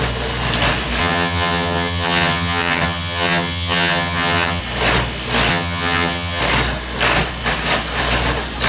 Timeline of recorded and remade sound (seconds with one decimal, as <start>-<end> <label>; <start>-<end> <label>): 0.0-1.0 recorded; 1.0-4.6 remade; 4.6-5.5 recorded; 5.5-6.4 remade; 6.4-8.7 recorded